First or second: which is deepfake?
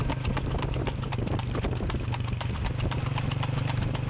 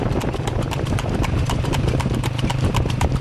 second